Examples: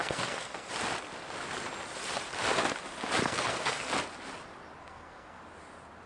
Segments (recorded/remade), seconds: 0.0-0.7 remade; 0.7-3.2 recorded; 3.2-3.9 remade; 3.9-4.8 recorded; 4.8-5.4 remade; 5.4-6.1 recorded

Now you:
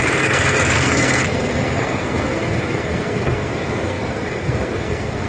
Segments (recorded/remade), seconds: 0.0-5.3 remade

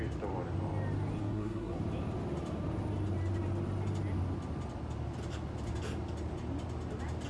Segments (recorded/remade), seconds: 0.0-1.2 recorded; 1.2-1.8 remade; 1.8-7.3 recorded

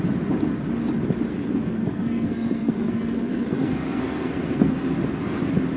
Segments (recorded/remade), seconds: 0.0-1.3 recorded; 1.3-4.8 remade; 4.8-5.8 recorded

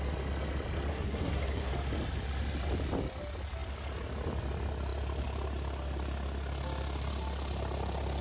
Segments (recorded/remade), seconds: 0.0-0.9 recorded; 0.9-1.7 remade; 1.7-8.2 recorded

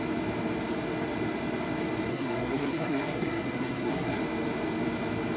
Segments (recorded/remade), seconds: 0.0-2.1 recorded; 2.1-4.2 remade; 4.2-5.4 recorded

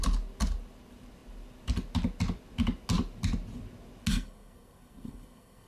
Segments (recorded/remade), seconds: 0.0-4.1 recorded; 4.1-5.7 remade